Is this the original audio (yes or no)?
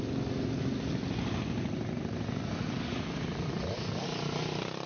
yes